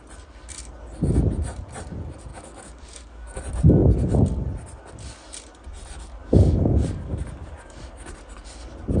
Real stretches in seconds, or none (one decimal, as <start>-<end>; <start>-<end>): 0.0-2.3; 3.4-6.2; 8.1-9.0